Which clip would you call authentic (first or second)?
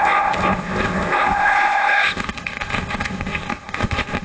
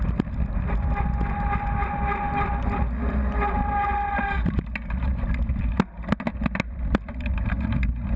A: second